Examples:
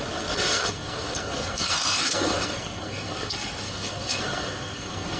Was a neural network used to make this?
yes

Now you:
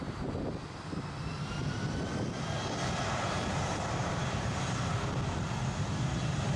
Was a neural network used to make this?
no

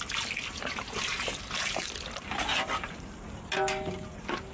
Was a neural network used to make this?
no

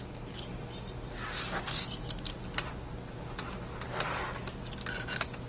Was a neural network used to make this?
no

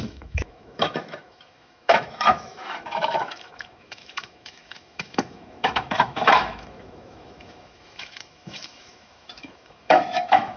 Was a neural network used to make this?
yes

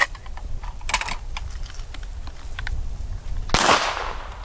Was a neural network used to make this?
no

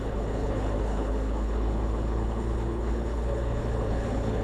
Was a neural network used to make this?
yes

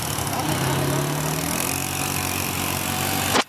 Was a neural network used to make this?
no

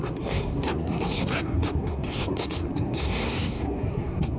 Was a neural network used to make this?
yes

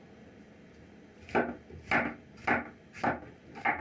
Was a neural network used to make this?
no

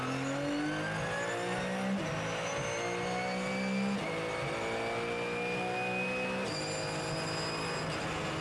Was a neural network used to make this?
no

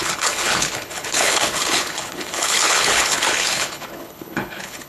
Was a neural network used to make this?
yes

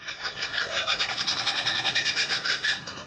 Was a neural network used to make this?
yes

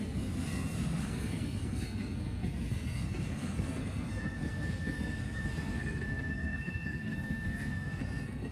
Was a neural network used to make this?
yes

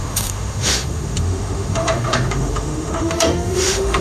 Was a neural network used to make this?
yes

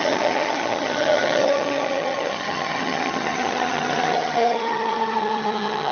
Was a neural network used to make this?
yes